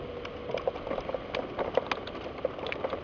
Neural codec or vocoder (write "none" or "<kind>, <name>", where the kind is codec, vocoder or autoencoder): none